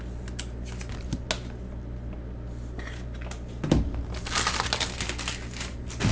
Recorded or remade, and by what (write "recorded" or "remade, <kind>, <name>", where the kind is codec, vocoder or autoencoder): recorded